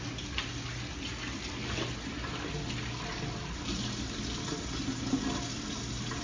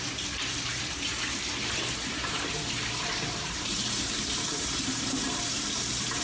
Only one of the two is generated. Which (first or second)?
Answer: second